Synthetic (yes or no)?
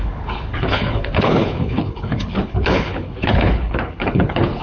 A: yes